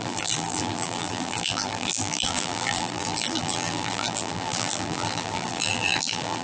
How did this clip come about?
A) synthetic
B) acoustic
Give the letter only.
A